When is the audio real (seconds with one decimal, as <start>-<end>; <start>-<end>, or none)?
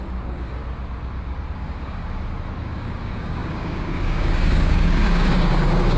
0.6-1.5; 2.0-2.6